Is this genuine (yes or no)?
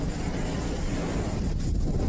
yes